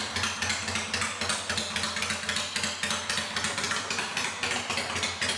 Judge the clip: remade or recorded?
recorded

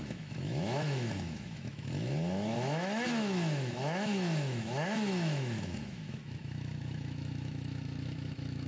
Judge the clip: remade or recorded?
remade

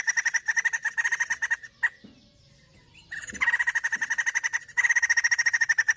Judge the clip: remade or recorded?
recorded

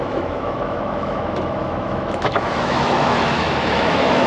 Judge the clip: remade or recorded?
remade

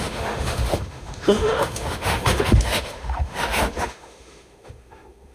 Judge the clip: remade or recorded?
remade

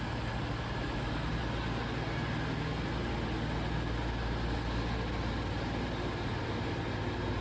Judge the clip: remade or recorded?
recorded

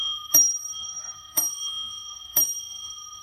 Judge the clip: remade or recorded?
remade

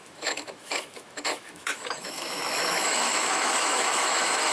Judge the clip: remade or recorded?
remade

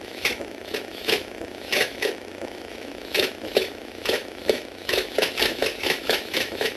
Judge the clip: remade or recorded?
remade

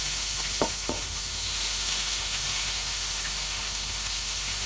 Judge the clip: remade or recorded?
remade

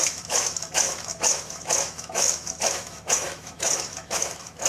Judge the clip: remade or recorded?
remade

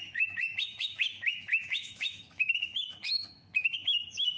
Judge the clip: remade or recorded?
remade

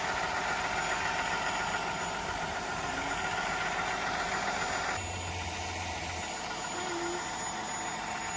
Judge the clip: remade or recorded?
recorded